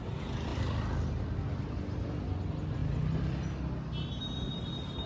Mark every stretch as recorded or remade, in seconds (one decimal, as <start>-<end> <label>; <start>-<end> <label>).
0.0-5.1 recorded